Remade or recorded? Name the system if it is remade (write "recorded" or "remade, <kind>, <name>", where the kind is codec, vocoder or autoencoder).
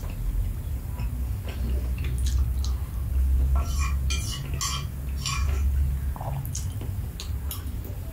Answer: recorded